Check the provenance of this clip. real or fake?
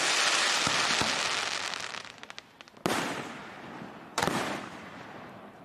real